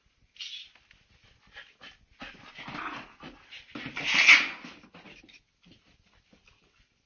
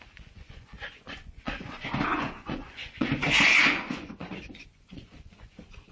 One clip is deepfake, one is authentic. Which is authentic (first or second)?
first